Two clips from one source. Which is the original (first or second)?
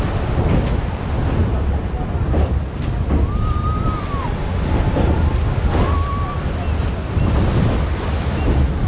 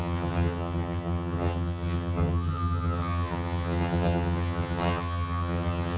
first